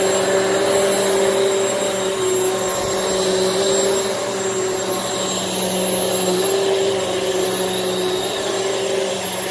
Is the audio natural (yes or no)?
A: yes